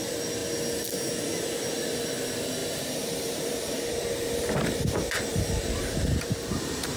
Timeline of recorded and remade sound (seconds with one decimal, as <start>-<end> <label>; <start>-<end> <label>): 0.0-2.6 recorded; 2.6-7.0 remade